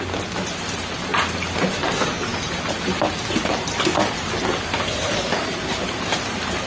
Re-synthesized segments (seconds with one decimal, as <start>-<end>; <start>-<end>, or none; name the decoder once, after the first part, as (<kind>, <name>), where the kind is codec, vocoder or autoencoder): none